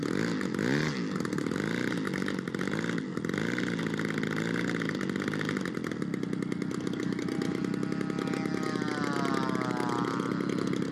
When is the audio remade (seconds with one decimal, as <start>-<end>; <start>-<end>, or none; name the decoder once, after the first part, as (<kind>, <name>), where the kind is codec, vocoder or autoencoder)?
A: none